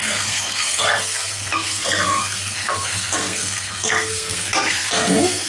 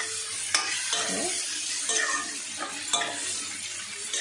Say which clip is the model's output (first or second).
first